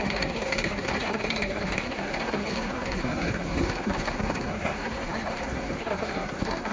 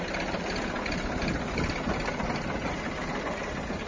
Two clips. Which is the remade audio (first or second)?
first